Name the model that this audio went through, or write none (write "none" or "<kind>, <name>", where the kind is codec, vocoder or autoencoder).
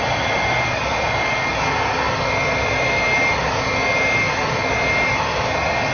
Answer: none